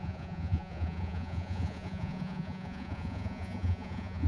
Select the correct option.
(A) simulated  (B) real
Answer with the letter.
A